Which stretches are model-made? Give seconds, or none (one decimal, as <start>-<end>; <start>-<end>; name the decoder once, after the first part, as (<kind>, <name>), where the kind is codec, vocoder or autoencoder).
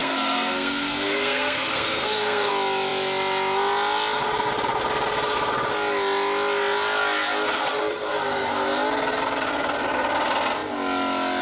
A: 0.0-2.5 (codec, SNAC)